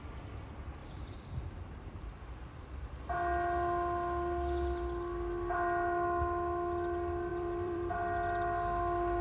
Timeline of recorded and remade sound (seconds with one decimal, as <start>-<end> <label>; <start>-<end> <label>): 0.0-0.8 recorded; 0.8-3.0 remade; 3.0-7.3 recorded; 7.3-7.9 remade; 7.9-9.2 recorded